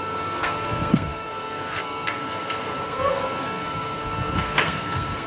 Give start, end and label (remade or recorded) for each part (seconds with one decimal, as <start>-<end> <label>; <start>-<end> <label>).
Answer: 0.0-5.3 remade